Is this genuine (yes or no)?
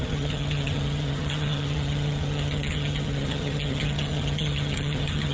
no